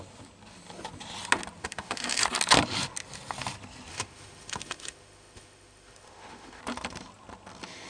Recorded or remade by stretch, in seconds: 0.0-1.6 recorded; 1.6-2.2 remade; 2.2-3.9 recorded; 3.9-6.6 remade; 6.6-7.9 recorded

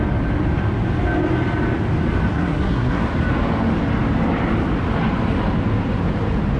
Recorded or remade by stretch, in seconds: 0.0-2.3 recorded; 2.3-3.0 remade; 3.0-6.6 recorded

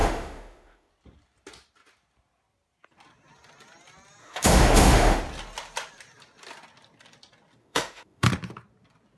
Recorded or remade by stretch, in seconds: 0.0-0.9 remade; 0.9-4.2 recorded; 4.2-5.2 remade; 5.2-7.6 recorded; 7.6-8.3 remade; 8.3-9.2 recorded

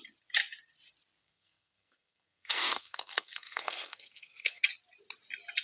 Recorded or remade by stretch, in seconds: 0.0-1.2 recorded; 1.2-4.6 remade; 4.6-5.6 recorded